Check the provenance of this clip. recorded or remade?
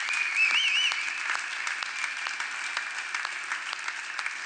recorded